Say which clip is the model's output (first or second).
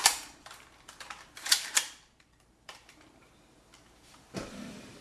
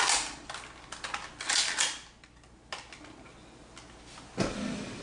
first